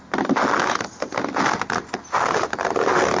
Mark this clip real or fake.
real